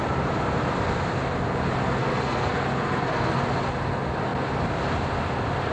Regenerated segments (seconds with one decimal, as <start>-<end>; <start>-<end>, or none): 2.0-3.4